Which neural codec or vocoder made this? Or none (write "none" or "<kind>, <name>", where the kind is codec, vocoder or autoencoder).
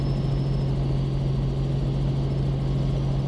none